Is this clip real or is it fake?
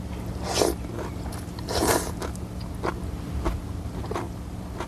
real